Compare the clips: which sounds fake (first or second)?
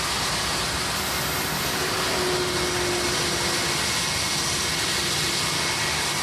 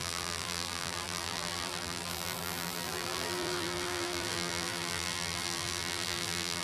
second